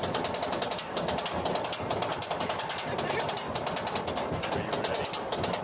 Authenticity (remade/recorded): recorded